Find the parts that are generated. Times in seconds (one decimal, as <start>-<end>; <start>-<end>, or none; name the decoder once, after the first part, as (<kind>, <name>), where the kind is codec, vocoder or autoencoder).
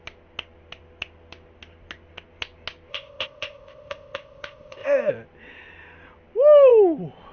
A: 2.9-5.1 (codec, ZipCodec)